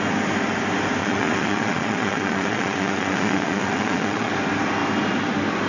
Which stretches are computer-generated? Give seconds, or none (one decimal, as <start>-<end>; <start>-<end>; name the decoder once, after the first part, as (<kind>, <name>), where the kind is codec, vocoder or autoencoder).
1.0-4.3 (vocoder, Vocos)